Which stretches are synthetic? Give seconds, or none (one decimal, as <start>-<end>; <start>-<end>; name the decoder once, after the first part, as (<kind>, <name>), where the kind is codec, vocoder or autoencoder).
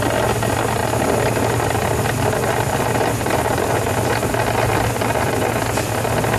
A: none